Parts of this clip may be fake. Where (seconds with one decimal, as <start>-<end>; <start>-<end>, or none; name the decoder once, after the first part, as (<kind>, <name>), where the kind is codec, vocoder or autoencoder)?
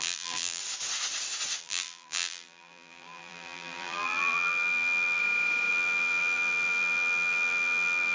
0.0-0.6 (vocoder, BigVGAN v2); 1.6-5.2; 5.7-8.1